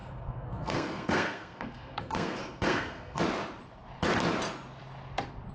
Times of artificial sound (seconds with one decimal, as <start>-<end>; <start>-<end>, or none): 0.0-3.2